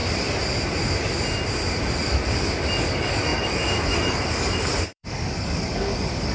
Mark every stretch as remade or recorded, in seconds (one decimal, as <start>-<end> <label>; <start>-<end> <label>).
0.0-2.7 recorded; 2.7-6.3 remade

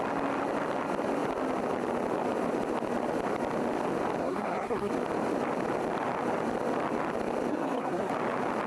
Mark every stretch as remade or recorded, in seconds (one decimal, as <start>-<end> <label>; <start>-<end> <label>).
0.0-4.2 recorded; 4.2-4.9 remade; 4.9-7.5 recorded; 7.5-8.1 remade; 8.1-8.7 recorded

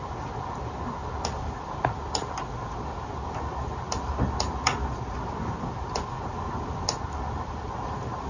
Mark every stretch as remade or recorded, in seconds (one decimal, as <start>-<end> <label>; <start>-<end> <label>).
0.0-8.3 recorded

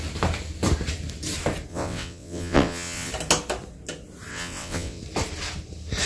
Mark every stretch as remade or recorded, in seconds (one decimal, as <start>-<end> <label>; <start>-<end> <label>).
0.0-1.7 recorded; 1.7-3.1 remade; 3.1-4.3 recorded; 4.3-5.0 remade; 5.0-6.1 recorded

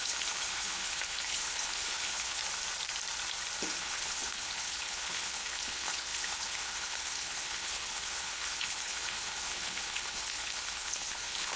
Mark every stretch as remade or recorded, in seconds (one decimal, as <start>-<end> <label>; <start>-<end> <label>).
0.0-2.4 remade; 2.4-3.8 recorded; 3.8-11.6 remade

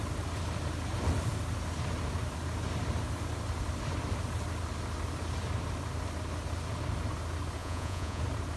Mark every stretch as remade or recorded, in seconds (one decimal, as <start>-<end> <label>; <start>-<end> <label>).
0.0-7.6 recorded; 7.6-8.2 remade; 8.2-8.6 recorded